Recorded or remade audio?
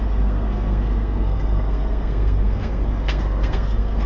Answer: remade